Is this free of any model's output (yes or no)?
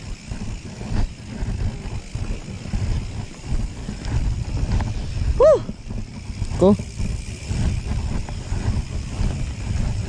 yes